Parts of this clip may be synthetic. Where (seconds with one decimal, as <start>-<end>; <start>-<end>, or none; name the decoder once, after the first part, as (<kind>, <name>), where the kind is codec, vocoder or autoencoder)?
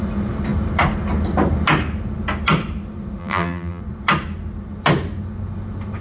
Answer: 3.2-3.8 (vocoder, BigVGAN v2)